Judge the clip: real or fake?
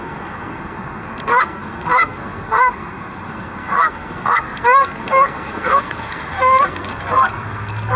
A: fake